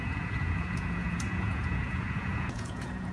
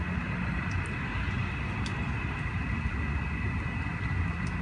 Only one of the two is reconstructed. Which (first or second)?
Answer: first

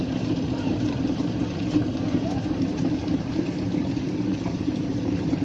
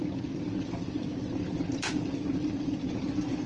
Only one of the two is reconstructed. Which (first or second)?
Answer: first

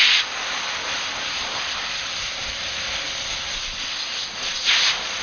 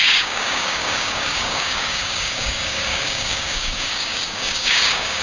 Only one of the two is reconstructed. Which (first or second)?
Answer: second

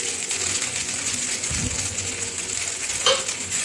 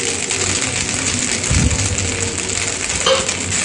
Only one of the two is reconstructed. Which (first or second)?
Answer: first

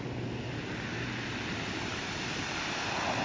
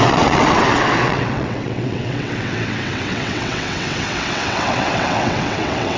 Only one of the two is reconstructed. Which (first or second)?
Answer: second